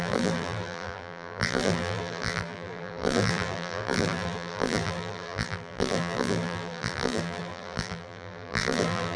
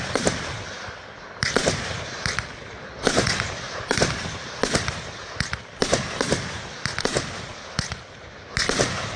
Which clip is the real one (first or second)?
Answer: second